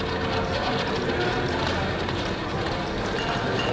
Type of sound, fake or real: real